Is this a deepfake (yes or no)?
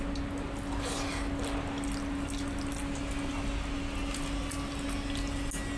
no